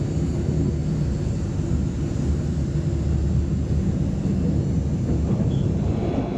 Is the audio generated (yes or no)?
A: no